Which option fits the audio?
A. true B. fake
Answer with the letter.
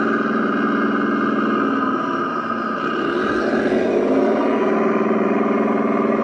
A